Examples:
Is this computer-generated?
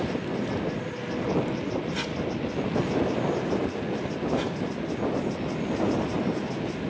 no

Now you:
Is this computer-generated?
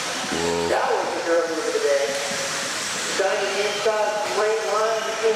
yes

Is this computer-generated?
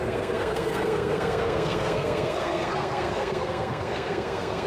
yes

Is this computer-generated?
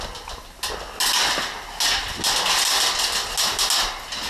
no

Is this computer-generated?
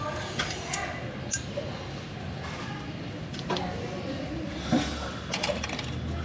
no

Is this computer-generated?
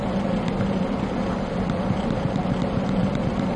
no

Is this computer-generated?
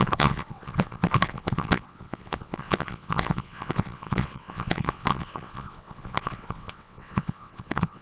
yes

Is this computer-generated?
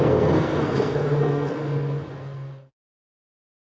yes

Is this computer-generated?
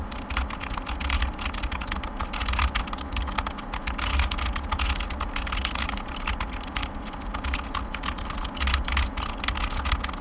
no